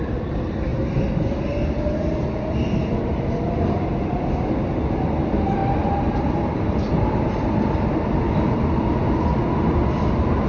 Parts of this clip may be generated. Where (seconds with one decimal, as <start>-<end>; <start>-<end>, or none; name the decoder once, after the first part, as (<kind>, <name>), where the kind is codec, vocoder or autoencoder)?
0.7-4.9 (vocoder, BigVGAN v2); 5.6-9.4